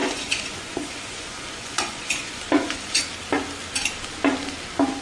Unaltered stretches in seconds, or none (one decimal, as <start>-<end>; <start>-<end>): 3.0-5.0